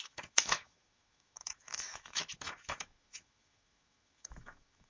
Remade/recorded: remade